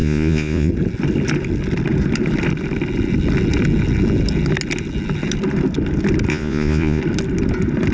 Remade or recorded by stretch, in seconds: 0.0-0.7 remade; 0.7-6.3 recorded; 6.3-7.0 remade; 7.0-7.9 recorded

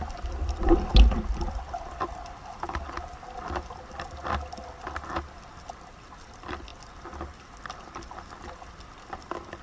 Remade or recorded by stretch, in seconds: 0.0-9.6 recorded